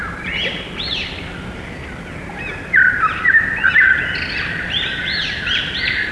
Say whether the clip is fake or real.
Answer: real